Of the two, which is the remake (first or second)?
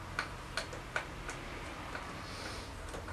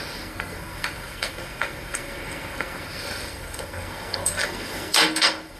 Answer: second